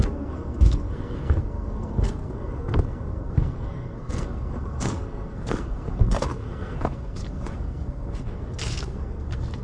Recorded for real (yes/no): no